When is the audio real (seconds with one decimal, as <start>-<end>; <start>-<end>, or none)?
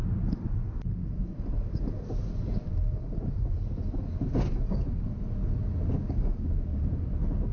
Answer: 0.0-6.0; 6.8-7.5